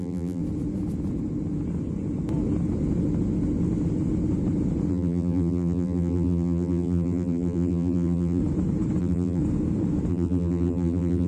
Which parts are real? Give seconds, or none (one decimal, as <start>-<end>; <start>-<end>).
0.4-4.9; 8.4-9.0; 9.4-10.1